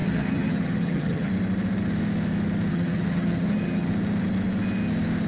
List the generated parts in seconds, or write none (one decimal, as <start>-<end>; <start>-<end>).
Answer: 0.0-1.3; 2.7-3.9